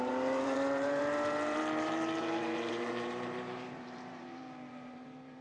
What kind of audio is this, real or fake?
fake